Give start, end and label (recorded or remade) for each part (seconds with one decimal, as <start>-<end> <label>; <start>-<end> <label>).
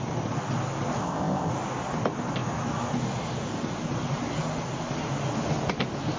0.0-1.0 recorded; 1.0-1.5 remade; 1.5-6.2 recorded